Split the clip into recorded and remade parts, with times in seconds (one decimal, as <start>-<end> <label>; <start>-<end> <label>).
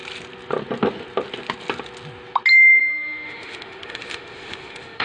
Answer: 0.0-2.8 recorded; 2.8-5.0 remade